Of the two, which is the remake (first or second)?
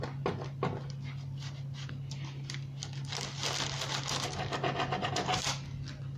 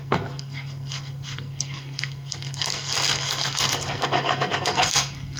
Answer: second